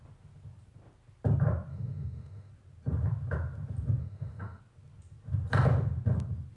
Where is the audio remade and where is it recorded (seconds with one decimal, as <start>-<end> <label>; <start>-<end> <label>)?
0.0-1.7 recorded; 1.7-2.5 remade; 2.5-4.0 recorded; 4.0-4.6 remade; 4.6-6.6 recorded